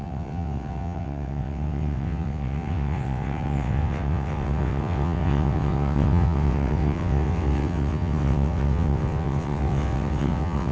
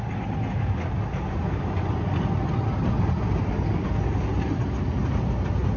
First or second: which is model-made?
first